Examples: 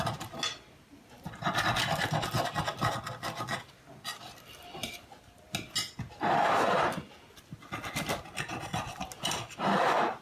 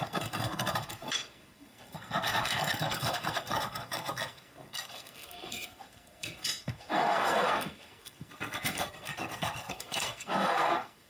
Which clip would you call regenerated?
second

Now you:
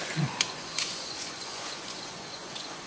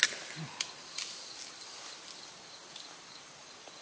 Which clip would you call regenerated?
first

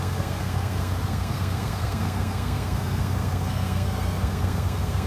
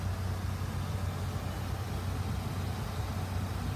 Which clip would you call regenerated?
first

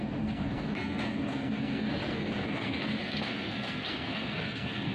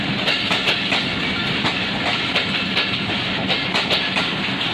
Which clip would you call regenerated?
first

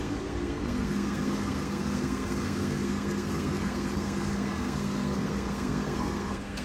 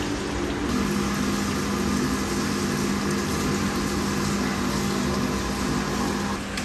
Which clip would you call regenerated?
first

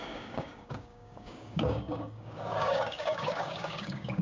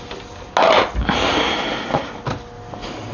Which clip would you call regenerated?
first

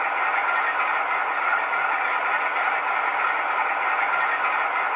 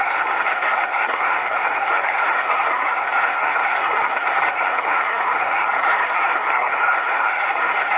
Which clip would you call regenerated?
second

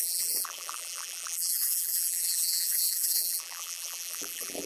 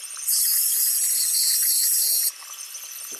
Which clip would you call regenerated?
first